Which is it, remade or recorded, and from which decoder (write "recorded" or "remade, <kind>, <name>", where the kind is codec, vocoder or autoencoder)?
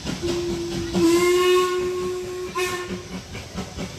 recorded